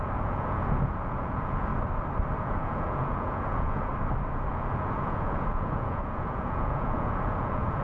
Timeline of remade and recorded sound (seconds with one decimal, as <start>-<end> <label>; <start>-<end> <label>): 0.0-1.7 remade; 1.7-2.4 recorded; 2.4-3.9 remade; 3.9-4.5 recorded; 4.5-7.8 remade

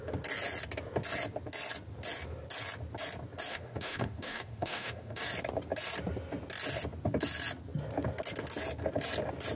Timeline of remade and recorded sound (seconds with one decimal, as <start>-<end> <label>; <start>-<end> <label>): 0.0-3.5 recorded; 3.5-5.2 remade; 5.2-9.6 recorded

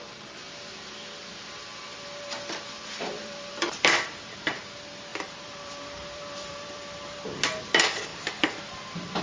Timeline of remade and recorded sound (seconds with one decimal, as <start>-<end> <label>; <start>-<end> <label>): 0.0-1.9 recorded; 1.9-4.6 remade; 4.6-5.1 recorded; 5.1-7.2 remade; 7.2-8.1 recorded; 8.1-9.2 remade